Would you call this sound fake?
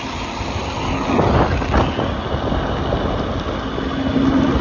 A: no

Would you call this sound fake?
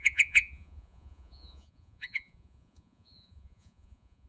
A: yes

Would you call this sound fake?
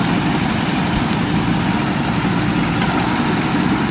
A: no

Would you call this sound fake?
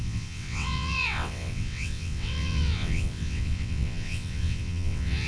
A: yes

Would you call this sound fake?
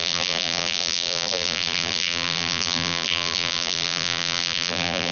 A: yes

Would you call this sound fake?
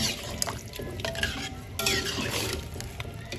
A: no